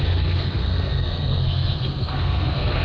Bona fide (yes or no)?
no